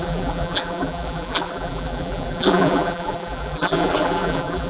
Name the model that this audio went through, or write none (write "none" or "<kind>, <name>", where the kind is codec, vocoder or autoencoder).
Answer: vocoder, BigVGAN v2